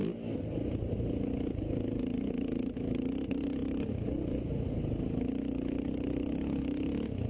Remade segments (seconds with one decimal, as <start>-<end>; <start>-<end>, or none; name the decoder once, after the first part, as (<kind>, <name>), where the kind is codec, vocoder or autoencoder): 3.6-4.4 (vocoder, BigVGAN v2)